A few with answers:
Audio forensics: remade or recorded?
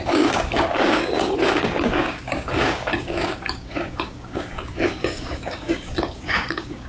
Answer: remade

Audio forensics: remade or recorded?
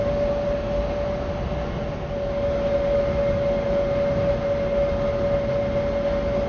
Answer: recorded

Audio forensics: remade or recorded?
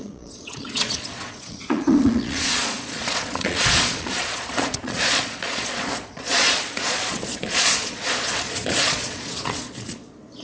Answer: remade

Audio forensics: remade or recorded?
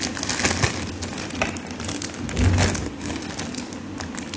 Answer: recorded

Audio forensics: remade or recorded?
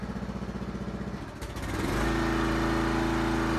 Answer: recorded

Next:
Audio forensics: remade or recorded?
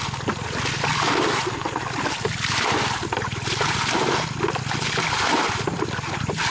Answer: recorded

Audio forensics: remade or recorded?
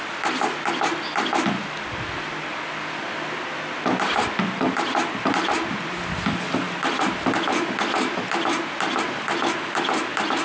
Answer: recorded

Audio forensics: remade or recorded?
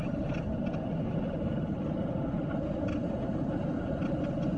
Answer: recorded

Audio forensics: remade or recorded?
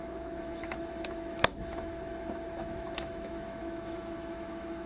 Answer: remade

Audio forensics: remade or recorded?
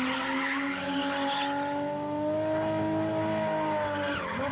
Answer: recorded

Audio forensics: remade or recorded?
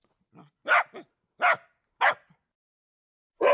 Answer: recorded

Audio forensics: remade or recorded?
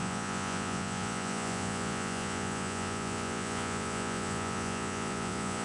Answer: remade